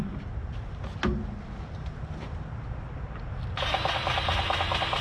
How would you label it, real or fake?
real